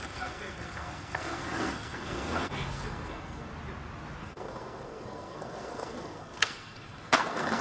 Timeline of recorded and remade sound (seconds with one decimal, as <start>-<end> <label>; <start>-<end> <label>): 0.0-3.5 remade; 3.5-4.2 recorded; 4.2-7.6 remade